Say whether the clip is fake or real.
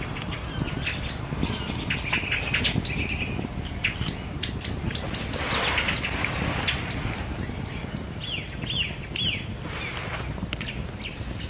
real